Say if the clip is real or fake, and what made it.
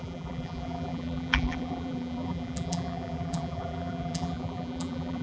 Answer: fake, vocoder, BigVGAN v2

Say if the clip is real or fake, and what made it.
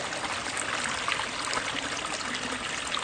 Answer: real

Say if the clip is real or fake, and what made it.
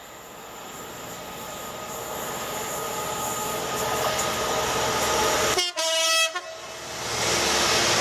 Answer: real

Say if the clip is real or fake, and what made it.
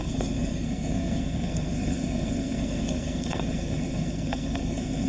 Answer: fake, codec, SNAC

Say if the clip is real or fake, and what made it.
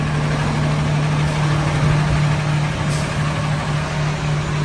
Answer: real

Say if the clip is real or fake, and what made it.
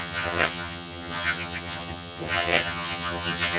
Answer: fake, vocoder, HiFi-GAN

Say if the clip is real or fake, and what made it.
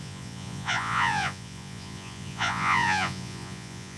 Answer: fake, vocoder, Vocos